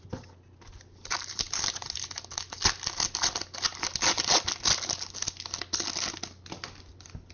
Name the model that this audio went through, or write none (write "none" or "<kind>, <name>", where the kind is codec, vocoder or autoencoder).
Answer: none